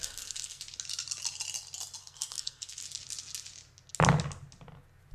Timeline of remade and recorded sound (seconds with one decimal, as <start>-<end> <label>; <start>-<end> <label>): 0.0-0.6 remade; 0.6-2.0 recorded; 2.0-2.8 remade; 2.8-5.1 recorded